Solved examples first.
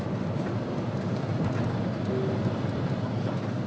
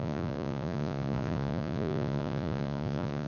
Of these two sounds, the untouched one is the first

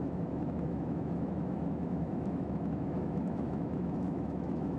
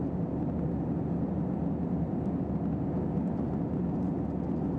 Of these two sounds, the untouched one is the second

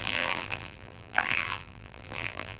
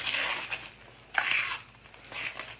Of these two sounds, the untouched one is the second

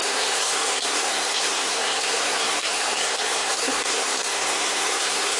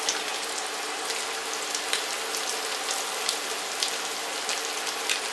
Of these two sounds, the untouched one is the second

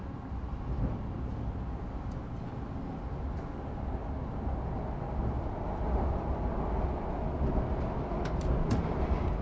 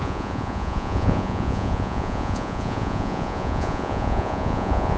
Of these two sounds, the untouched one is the first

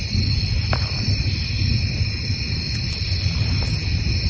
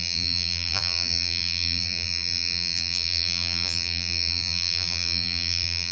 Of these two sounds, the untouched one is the first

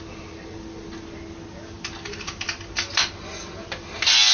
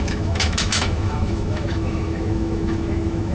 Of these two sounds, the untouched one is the first